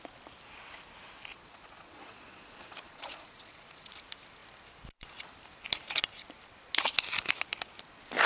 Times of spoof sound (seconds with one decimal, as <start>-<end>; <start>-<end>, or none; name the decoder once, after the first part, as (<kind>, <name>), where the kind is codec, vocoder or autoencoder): 1.3-3.9 (vocoder, Vocos)